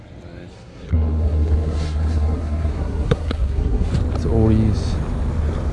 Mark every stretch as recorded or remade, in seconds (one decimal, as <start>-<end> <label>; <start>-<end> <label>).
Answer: 0.0-0.5 recorded; 0.5-3.9 remade; 3.9-5.7 recorded